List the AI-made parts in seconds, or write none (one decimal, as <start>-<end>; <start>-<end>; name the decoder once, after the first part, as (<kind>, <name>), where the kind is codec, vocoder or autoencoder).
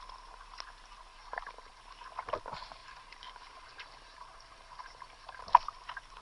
1.1-1.8 (vocoder, BigVGAN v2); 2.8-5.4